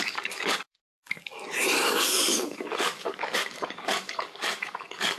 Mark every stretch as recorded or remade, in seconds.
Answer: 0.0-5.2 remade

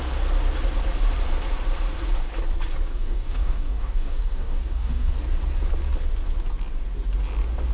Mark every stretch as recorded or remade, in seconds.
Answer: 0.0-2.9 recorded; 2.9-5.1 remade; 5.1-7.7 recorded

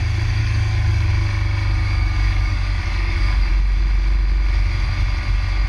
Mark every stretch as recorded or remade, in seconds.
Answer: 0.0-0.4 recorded; 0.4-1.1 remade; 1.1-1.8 recorded; 1.8-3.5 remade; 3.5-5.7 recorded

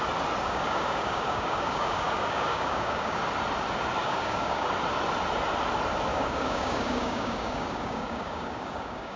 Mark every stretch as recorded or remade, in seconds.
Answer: 0.0-0.4 recorded; 0.4-3.2 remade; 3.2-4.0 recorded; 4.0-4.7 remade; 4.7-6.1 recorded; 6.1-9.2 remade

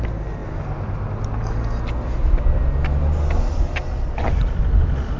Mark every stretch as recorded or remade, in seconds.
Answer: 0.0-5.2 recorded

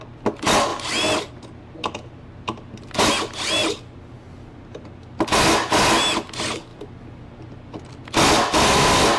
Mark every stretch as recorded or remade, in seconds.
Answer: 0.0-9.2 recorded